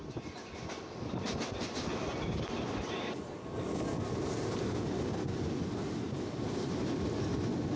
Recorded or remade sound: recorded